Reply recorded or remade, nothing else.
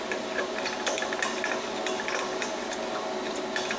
recorded